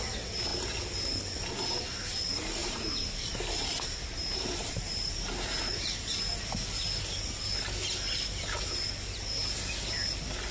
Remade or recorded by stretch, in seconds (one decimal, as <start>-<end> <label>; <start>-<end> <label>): 0.0-2.6 recorded; 2.6-6.2 remade; 6.2-10.5 recorded